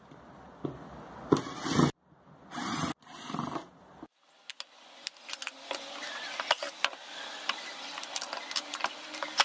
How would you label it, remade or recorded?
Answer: recorded